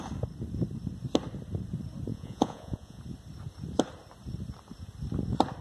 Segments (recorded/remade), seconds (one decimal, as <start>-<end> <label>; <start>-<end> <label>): 0.0-2.1 recorded; 2.1-3.0 remade; 3.0-5.6 recorded